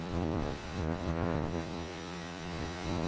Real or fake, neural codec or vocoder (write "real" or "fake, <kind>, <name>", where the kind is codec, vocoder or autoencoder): fake, vocoder, Vocos